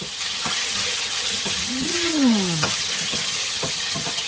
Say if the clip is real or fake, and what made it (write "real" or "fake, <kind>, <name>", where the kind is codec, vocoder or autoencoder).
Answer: fake, vocoder, HiFi-GAN